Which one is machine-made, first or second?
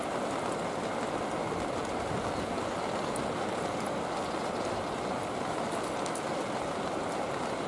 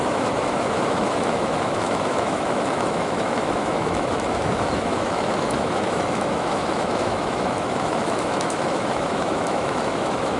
second